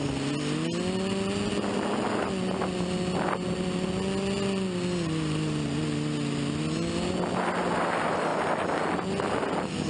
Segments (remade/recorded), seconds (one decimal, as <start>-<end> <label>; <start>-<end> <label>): 0.0-9.9 recorded

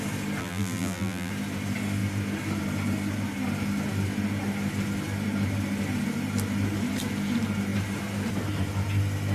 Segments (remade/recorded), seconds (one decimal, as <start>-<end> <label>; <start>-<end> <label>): 0.0-0.4 recorded; 0.4-1.3 remade; 1.3-9.3 recorded